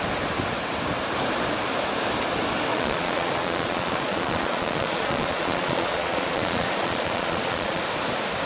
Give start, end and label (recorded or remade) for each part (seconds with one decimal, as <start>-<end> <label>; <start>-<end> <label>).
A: 0.0-2.7 recorded; 2.7-7.8 remade; 7.8-8.5 recorded